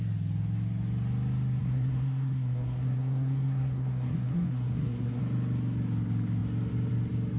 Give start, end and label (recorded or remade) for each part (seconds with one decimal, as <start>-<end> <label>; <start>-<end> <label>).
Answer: 0.0-1.6 recorded; 1.6-5.2 remade; 5.2-7.4 recorded